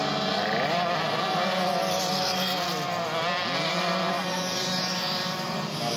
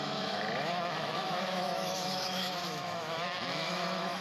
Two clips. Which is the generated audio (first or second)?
second